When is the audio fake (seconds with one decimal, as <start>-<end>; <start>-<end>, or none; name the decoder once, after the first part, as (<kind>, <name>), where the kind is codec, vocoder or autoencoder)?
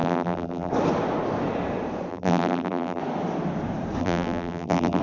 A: 0.0-0.7 (vocoder, BigVGAN v2); 2.1-3.0; 4.0-5.0